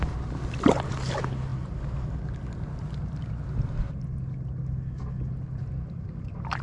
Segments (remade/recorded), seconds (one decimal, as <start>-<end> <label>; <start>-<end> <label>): 0.0-6.6 recorded